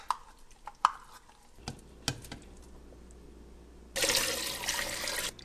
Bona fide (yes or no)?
yes